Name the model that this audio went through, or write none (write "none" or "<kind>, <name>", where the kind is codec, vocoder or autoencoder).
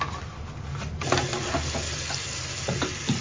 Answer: none